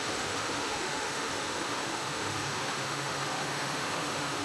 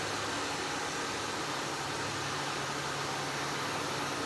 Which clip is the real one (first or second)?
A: second